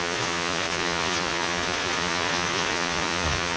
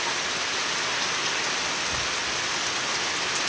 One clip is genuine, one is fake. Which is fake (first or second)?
first